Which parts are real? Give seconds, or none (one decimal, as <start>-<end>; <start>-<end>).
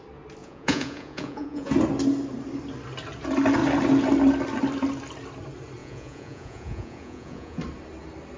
0.0-0.4; 1.7-5.8; 7.6-8.4